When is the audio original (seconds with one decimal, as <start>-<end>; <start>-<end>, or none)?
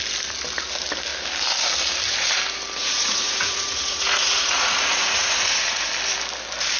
0.0-2.8; 5.9-6.8